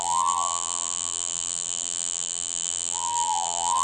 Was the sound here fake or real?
fake